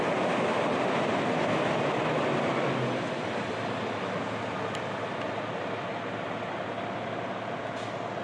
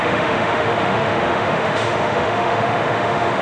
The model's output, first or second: second